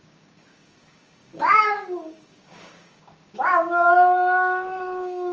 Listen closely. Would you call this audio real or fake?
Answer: fake